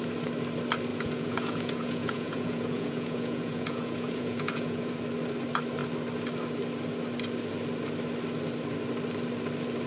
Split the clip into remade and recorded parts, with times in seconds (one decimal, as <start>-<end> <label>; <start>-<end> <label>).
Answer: 0.0-0.9 recorded; 0.9-4.9 remade; 4.9-9.9 recorded